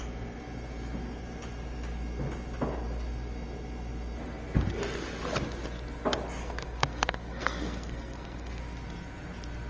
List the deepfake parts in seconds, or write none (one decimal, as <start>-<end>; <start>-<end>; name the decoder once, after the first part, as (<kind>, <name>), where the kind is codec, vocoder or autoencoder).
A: 6.4-8.6 (codec, SNAC)